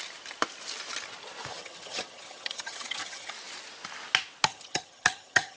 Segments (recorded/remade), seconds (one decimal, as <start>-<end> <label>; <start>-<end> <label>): 0.0-1.5 recorded; 1.5-3.3 remade; 3.3-4.5 recorded; 4.5-5.6 remade

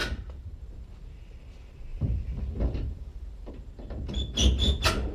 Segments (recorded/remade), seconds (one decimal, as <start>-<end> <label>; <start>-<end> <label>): 0.0-0.6 remade; 0.6-1.9 recorded; 1.9-3.5 remade; 3.5-5.1 recorded

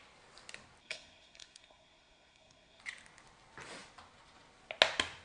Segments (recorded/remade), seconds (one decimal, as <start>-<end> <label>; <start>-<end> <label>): 0.0-0.8 recorded; 0.8-2.8 remade; 2.8-5.2 recorded

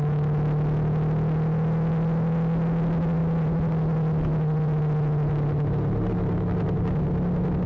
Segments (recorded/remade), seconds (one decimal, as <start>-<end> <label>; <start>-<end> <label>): 0.0-7.7 recorded